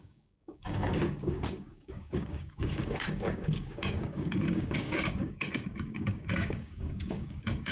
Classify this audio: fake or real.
fake